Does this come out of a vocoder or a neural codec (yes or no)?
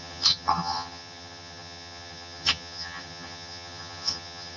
yes